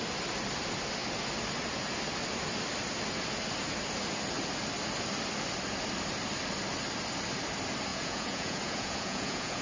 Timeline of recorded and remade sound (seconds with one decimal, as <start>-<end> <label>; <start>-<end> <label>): 0.0-7.9 recorded; 7.9-9.6 remade

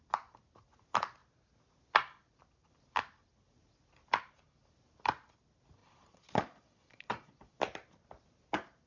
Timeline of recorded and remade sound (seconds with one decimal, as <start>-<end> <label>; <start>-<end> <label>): 0.0-5.8 recorded; 5.8-7.6 remade; 7.6-8.9 recorded

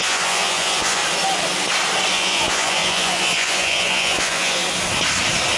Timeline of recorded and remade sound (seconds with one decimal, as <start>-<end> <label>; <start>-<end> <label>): 0.0-1.0 remade; 1.0-2.1 recorded; 2.1-4.6 remade; 4.6-5.6 recorded

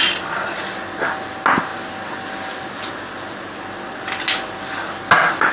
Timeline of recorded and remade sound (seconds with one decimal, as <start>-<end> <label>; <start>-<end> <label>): 0.0-5.5 recorded